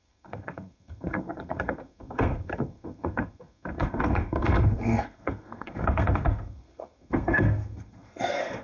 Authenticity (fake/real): fake